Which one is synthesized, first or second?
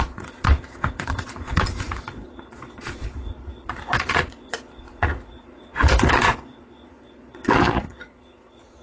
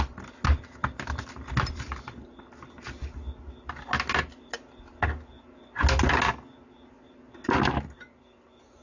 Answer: first